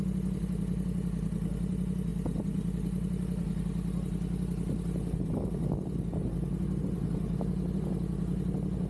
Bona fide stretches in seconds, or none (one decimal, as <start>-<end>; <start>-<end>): 0.0-8.9